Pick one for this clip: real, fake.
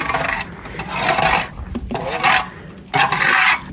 real